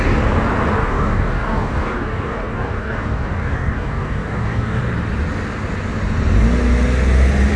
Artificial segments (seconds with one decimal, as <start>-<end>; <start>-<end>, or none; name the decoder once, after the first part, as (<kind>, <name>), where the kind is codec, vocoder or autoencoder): 0.8-4.8 (codec, DAC)